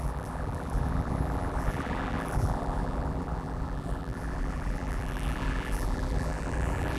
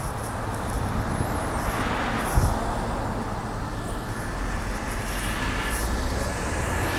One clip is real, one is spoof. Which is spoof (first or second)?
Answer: first